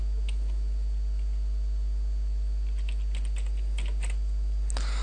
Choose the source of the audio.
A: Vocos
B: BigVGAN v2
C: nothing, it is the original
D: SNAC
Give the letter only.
C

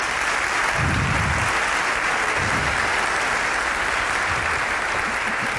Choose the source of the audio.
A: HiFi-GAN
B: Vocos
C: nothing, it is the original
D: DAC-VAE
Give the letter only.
C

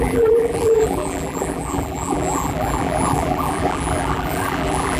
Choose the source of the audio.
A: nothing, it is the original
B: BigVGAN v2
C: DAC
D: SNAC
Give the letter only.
B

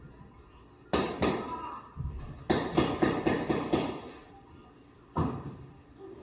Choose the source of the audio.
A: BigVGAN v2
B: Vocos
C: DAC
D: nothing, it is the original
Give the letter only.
D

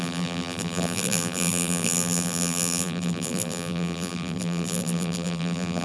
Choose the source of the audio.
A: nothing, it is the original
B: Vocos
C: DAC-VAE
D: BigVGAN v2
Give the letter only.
D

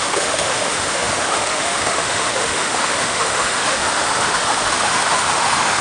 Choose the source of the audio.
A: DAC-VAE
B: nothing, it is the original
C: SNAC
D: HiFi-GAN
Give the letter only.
A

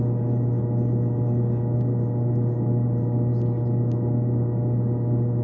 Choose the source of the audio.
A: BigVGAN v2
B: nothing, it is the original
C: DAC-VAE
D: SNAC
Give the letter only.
B